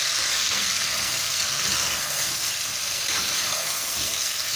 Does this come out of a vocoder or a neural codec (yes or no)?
yes